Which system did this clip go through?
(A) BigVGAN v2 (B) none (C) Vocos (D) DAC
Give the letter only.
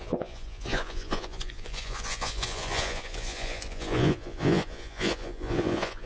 C